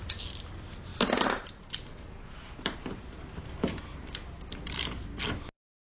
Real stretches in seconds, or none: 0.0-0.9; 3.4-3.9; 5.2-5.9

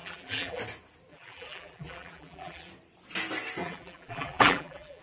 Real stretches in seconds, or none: 0.6-1.1; 2.7-3.6